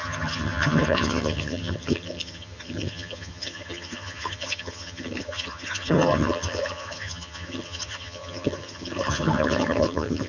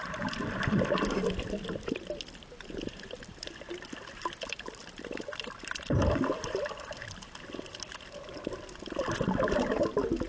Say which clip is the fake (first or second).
first